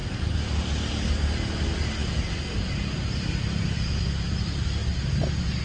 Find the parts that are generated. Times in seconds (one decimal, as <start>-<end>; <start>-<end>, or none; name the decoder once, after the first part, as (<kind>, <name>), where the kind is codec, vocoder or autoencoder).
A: 0.0-0.5 (vocoder, BigVGAN v2); 2.0-5.6